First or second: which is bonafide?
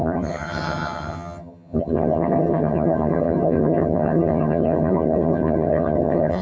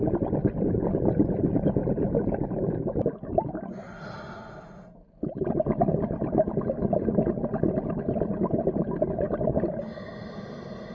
second